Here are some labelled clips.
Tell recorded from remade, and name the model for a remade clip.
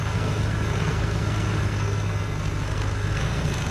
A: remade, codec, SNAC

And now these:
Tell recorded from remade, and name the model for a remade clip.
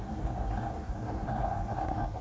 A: remade, codec, SNAC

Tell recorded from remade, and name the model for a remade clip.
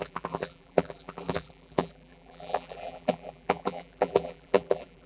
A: remade, vocoder, BigVGAN v2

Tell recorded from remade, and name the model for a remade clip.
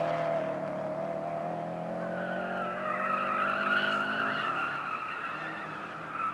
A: recorded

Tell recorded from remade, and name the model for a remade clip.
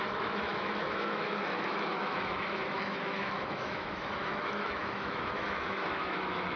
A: remade, autoencoder, DAC-VAE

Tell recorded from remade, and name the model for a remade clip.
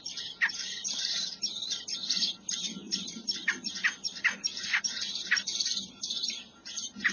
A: remade, vocoder, BigVGAN v2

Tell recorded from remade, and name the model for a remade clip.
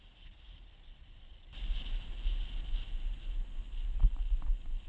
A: recorded